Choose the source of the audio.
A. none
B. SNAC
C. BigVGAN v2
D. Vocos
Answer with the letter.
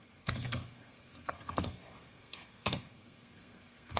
B